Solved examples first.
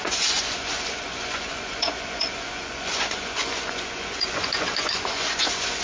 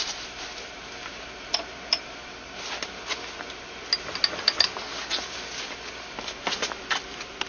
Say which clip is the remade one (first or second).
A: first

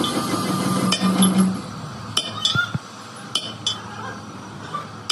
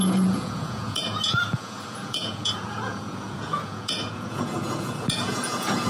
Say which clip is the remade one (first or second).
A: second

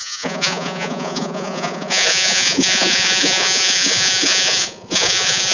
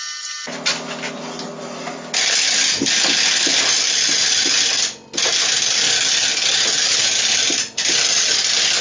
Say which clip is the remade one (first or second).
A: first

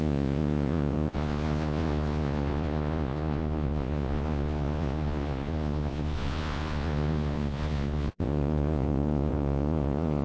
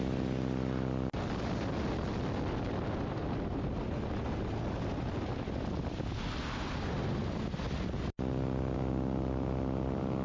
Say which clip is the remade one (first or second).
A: first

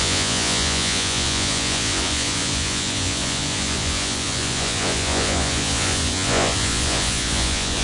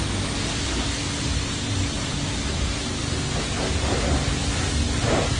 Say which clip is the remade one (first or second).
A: first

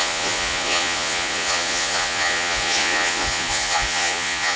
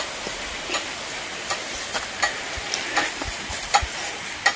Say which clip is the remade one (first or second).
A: first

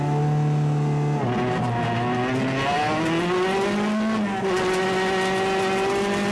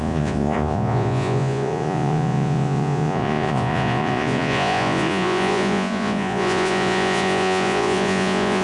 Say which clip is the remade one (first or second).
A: second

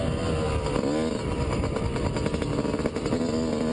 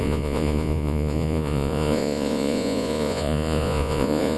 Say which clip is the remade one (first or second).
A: second